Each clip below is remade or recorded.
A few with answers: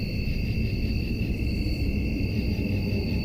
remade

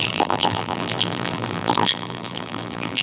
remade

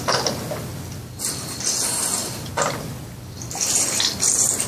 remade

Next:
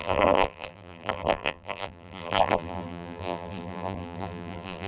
remade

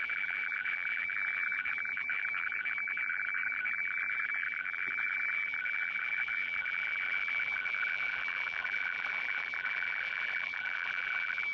remade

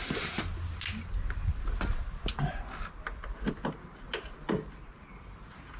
recorded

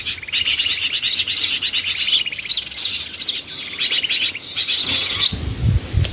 recorded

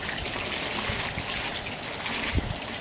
recorded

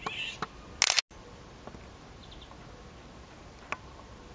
recorded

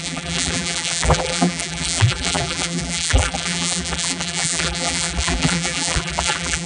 remade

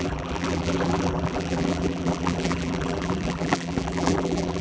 remade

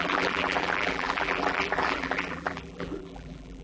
remade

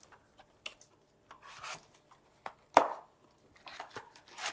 recorded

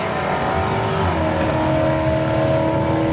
recorded